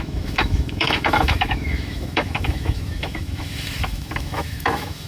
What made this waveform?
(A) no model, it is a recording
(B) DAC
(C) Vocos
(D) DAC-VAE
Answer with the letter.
D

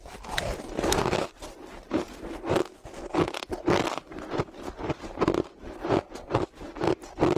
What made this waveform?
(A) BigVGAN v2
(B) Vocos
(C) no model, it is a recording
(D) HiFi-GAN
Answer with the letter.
C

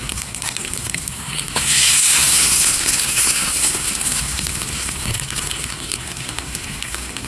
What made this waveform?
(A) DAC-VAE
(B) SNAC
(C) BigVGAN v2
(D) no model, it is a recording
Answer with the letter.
B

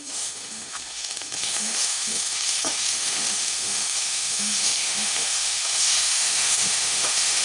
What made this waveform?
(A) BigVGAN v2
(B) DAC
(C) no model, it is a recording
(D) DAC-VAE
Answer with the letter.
D